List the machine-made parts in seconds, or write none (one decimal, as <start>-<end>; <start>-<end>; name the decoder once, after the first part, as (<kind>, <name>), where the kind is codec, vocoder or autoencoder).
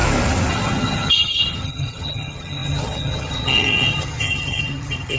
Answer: 0.5-5.2 (vocoder, HiFi-GAN)